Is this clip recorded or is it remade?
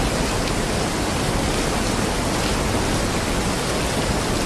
recorded